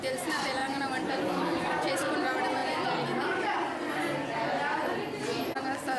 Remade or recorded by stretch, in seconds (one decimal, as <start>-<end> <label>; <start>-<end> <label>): 0.0-0.6 recorded; 0.6-1.9 remade; 1.9-6.0 recorded

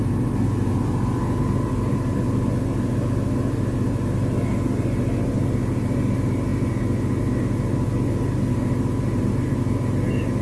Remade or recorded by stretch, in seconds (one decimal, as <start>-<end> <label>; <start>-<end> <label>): 0.0-10.4 recorded

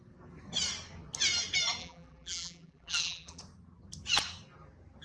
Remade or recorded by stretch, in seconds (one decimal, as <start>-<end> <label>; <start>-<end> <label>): 0.0-1.8 recorded; 1.8-3.4 remade; 3.4-5.0 recorded

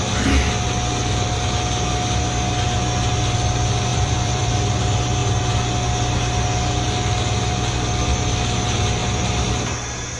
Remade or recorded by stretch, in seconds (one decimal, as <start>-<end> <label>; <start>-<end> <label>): 0.0-3.9 recorded; 3.9-4.5 remade; 4.5-9.0 recorded; 9.0-9.5 remade; 9.5-10.2 recorded

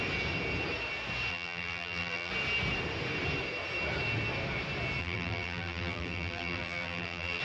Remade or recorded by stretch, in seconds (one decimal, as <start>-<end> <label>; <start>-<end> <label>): 0.0-1.3 recorded; 1.3-2.3 remade; 2.3-5.0 recorded; 5.0-7.4 remade

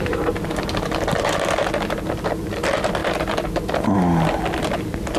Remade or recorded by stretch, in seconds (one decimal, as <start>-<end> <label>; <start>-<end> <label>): 0.0-3.0 recorded; 3.0-3.6 remade; 3.6-5.2 recorded

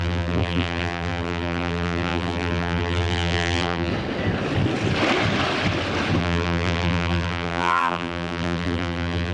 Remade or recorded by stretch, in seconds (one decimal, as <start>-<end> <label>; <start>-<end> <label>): 0.0-3.9 remade; 3.9-6.2 recorded; 6.2-9.3 remade

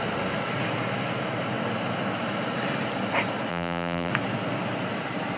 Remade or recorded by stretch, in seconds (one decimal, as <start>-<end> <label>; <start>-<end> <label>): 0.0-3.5 recorded; 3.5-4.1 remade; 4.1-5.4 recorded